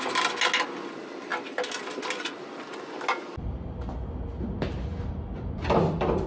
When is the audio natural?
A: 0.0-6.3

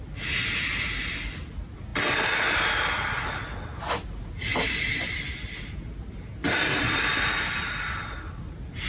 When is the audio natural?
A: 0.0-8.9

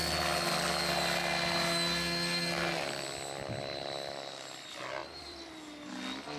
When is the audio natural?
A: 0.0-5.0; 5.5-6.4

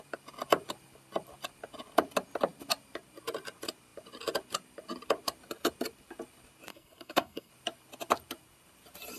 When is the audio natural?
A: 0.0-6.7; 7.5-9.2

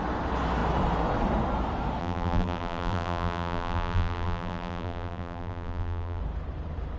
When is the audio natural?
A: 0.0-2.0; 6.2-7.0

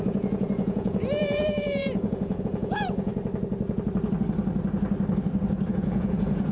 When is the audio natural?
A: 3.1-5.7

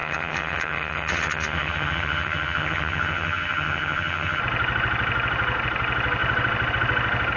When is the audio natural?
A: 4.4-7.4

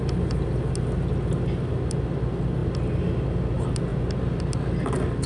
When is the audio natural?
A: 0.0-5.3